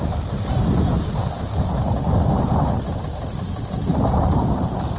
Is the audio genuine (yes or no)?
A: yes